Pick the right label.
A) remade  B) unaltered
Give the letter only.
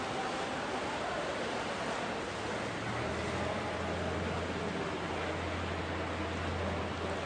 B